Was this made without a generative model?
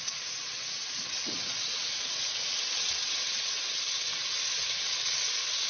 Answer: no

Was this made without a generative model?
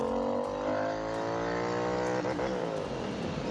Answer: yes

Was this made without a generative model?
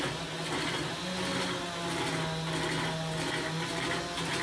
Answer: yes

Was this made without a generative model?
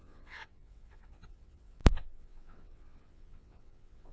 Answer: no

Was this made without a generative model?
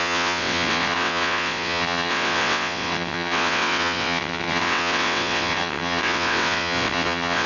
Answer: no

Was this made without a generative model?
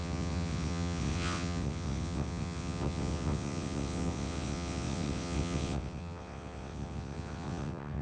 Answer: no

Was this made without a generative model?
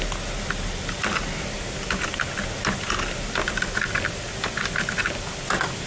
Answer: yes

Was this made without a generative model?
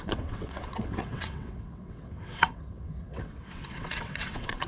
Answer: no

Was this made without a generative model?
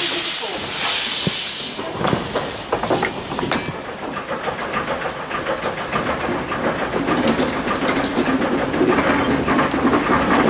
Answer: yes